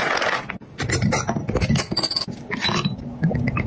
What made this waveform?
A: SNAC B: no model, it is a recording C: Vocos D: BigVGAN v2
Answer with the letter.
B